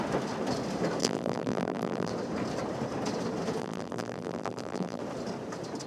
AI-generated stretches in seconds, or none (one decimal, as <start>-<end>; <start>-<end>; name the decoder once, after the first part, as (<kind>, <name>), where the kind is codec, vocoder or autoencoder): 1.0-2.1 (vocoder, BigVGAN v2); 3.6-5.0